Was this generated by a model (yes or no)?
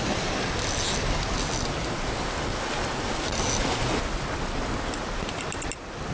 no